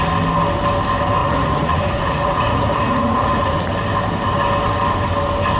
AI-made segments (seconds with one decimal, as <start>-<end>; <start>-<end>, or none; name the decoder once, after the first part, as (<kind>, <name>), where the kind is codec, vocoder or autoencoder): 1.2-3.7 (vocoder, Vocos)